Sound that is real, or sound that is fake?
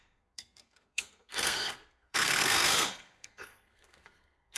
fake